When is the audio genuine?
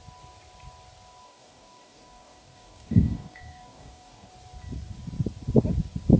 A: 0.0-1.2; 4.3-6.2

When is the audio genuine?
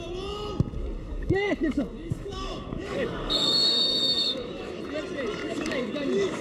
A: 0.0-1.0; 4.8-5.4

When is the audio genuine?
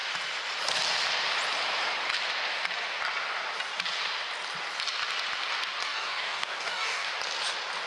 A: 0.0-5.8; 7.1-7.9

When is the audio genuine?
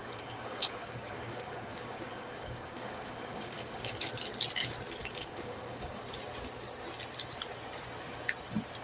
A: 4.1-5.0; 6.0-8.8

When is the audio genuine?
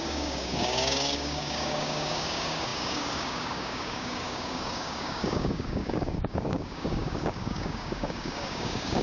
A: none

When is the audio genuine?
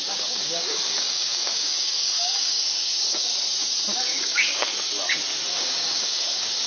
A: 3.3-4.0; 4.7-5.5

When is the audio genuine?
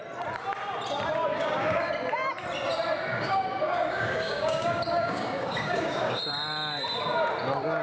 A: 0.0-1.3; 1.9-3.1; 6.2-7.8